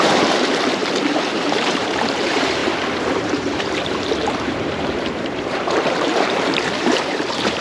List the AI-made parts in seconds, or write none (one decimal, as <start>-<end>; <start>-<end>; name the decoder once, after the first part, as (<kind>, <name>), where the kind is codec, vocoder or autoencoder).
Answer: 0.0-0.8 (vocoder, BigVGAN v2); 1.3-7.6